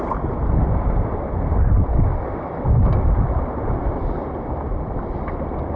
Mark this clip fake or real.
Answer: real